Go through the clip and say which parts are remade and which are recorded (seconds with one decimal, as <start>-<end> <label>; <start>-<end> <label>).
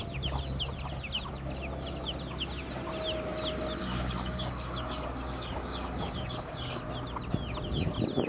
0.0-3.8 recorded; 3.8-6.8 remade; 6.8-8.3 recorded